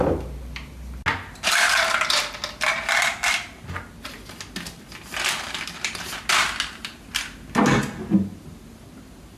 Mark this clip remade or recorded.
recorded